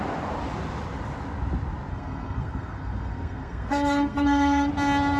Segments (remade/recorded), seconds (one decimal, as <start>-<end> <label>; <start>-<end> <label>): 0.0-1.9 recorded; 1.9-4.7 remade; 4.7-5.2 recorded

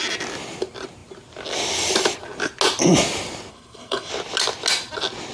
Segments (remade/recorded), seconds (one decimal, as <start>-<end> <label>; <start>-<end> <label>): 0.0-3.5 recorded; 3.5-4.1 remade; 4.1-5.3 recorded